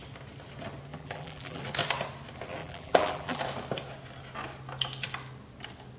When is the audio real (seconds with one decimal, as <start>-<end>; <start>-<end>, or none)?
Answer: 0.0-0.9; 1.6-2.6; 3.4-6.0